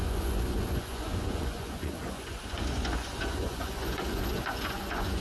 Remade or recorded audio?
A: remade